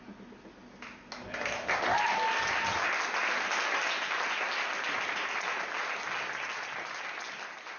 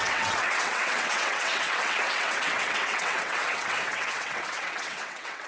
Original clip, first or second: first